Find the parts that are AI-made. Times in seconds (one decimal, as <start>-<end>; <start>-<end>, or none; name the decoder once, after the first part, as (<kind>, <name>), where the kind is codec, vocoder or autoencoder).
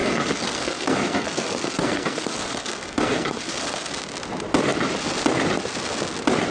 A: 0.0-3.9 (codec, SNAC)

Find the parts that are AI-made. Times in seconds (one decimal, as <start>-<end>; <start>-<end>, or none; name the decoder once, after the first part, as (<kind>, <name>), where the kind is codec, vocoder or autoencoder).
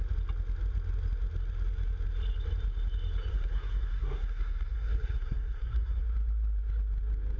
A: 3.3-6.0 (codec, SNAC)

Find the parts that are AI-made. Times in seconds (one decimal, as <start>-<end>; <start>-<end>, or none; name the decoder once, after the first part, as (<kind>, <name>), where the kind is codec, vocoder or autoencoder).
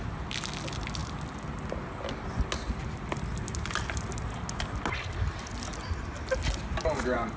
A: none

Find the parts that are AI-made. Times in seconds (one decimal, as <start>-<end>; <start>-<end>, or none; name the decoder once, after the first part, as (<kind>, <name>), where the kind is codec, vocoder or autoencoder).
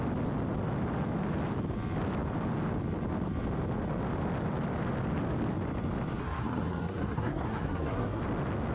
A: 6.2-8.2 (codec, SNAC)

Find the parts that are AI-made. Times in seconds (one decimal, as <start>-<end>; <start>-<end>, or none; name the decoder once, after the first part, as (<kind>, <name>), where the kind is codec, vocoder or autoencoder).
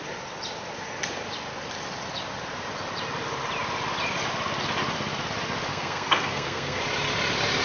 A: 5.7-6.8 (codec, SNAC)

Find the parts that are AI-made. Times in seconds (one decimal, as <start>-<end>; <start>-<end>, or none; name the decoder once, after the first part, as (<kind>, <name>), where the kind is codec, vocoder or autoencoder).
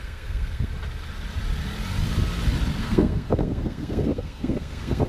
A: 0.0-0.7 (codec, SNAC); 2.8-5.1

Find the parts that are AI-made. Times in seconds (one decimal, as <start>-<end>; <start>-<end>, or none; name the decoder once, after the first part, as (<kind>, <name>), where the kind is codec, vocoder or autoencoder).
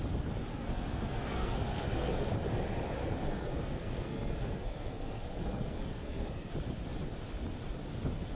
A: 0.5-2.3 (codec, SNAC); 3.0-6.5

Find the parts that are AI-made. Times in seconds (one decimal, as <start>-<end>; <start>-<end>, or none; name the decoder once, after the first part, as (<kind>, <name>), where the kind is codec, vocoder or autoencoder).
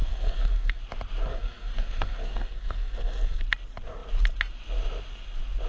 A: 0.0-0.8 (codec, SNAC); 1.3-3.4